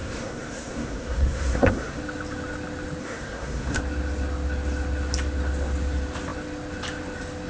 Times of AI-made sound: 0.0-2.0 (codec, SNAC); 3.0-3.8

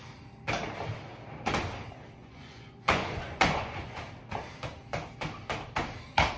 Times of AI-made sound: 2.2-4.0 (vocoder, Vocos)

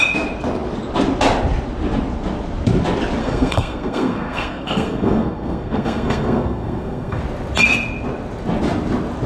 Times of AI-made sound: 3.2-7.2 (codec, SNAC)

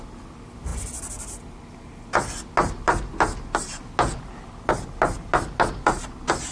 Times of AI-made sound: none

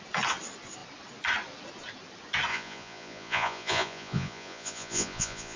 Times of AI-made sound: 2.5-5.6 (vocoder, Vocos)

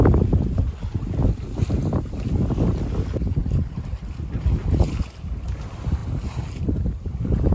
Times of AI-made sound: none

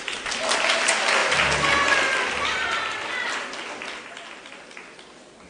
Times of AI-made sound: none

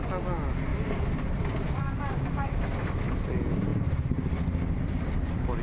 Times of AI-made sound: 0.7-3.2 (vocoder, BigVGAN v2)